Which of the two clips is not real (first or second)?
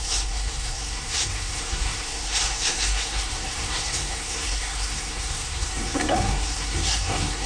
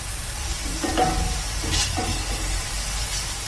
first